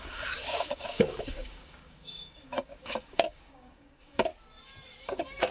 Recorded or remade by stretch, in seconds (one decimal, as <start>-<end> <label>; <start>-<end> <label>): 0.0-4.3 remade; 4.3-5.1 recorded; 5.1-5.5 remade